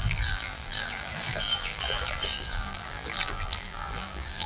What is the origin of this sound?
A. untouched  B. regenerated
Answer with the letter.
B